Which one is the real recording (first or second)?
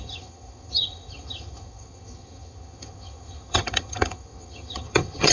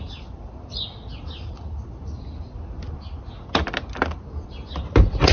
second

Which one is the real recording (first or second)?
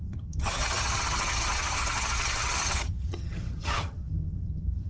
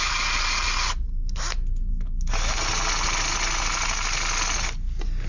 second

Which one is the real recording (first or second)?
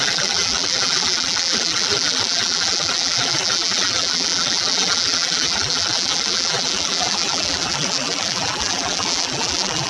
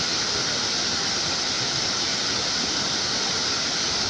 second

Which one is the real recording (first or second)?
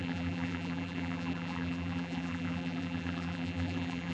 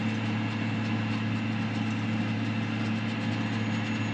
second